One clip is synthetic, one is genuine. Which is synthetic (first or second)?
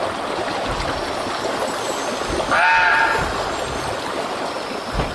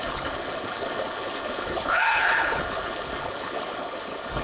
second